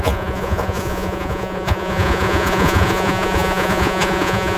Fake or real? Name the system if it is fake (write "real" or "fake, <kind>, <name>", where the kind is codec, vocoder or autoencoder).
fake, vocoder, Vocos